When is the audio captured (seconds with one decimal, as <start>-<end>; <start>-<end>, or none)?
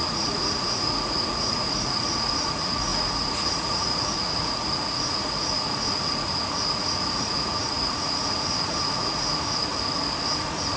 9.7-10.3